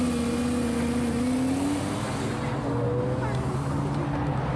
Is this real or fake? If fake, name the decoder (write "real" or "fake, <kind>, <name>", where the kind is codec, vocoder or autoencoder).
real